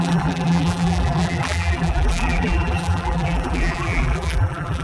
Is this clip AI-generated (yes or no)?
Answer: yes